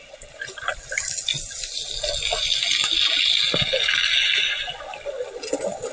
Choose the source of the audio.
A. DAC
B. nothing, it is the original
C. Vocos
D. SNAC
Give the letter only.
B